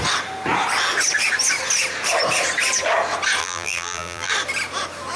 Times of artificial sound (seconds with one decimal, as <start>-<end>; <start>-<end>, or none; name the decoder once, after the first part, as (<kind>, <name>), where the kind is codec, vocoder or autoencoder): 3.4-4.3 (vocoder, BigVGAN v2)